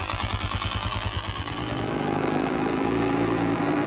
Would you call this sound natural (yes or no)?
no